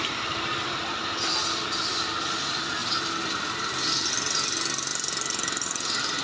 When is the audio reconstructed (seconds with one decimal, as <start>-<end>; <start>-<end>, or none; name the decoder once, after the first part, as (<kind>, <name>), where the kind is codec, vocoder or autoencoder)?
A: 0.0-2.8 (vocoder, BigVGAN v2); 4.1-4.9